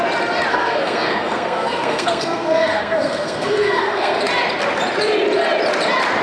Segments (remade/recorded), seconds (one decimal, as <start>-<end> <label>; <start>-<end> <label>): 0.0-0.5 recorded; 0.5-4.2 remade; 4.2-6.2 recorded